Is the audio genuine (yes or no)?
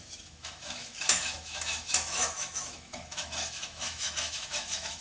no